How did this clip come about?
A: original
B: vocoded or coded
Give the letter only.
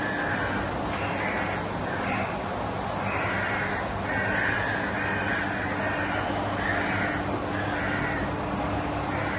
A